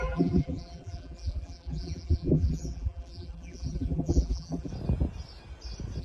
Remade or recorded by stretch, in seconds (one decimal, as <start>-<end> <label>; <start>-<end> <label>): 0.0-4.7 remade; 4.7-6.0 recorded